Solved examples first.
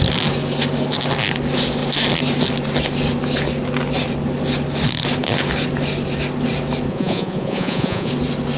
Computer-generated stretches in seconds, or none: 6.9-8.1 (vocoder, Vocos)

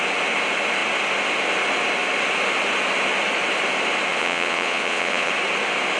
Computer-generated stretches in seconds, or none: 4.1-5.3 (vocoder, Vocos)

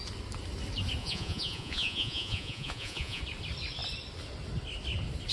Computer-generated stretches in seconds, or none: 1.0-3.2 (vocoder, Vocos)